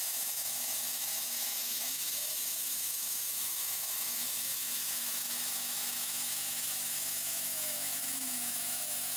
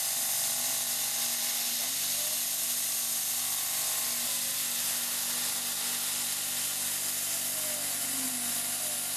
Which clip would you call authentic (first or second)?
second